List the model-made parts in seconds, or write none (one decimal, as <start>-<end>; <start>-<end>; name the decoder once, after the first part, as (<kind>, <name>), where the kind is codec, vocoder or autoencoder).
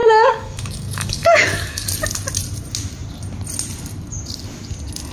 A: 0.0-1.9 (codec, DAC)